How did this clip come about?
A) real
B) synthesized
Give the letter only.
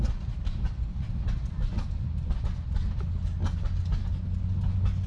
A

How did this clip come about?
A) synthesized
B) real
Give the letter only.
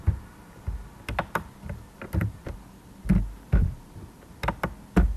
B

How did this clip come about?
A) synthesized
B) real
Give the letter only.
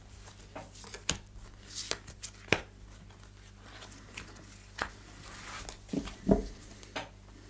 B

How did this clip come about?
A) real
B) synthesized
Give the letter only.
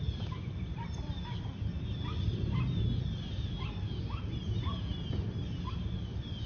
A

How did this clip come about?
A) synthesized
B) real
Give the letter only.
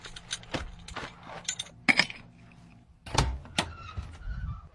B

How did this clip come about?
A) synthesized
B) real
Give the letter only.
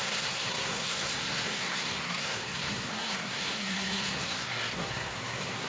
A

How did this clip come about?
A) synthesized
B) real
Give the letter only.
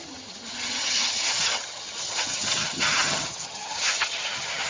A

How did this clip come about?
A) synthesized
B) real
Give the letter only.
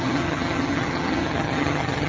A